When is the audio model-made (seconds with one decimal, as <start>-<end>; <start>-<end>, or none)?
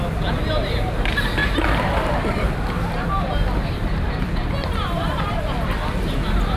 1.4-5.4